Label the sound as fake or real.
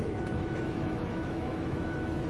fake